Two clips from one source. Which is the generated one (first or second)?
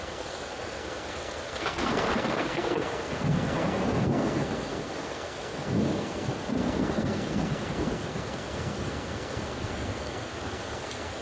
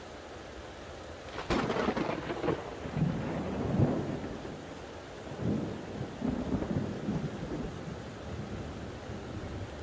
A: first